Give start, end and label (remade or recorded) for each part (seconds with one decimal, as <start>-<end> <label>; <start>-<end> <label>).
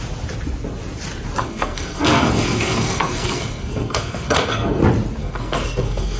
0.0-1.4 recorded; 1.4-4.8 remade; 4.8-5.2 recorded; 5.2-6.2 remade